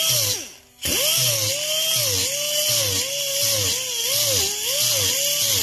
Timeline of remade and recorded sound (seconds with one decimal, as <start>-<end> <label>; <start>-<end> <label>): 0.0-5.6 recorded